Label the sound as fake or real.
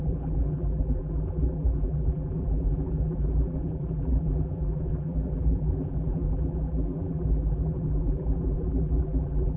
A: fake